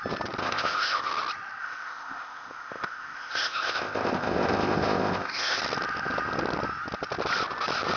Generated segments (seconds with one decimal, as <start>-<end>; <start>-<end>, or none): 0.4-1.1; 1.6-5.6